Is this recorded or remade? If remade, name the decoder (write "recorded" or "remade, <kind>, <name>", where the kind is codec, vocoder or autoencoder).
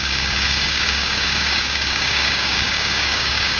remade, codec, DAC